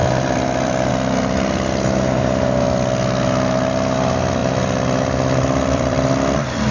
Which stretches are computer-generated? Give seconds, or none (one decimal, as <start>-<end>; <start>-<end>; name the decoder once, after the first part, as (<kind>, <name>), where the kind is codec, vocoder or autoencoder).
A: 0.0-0.9 (vocoder, BigVGAN v2); 4.4-6.7